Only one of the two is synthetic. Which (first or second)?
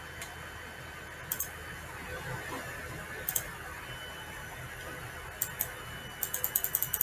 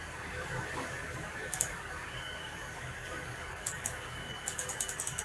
second